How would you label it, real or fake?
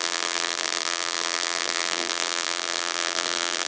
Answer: fake